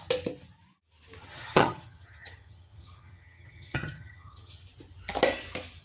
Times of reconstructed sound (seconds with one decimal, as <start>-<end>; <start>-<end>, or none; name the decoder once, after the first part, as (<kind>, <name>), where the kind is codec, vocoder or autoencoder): 1.2-4.6 (vocoder, HiFi-GAN)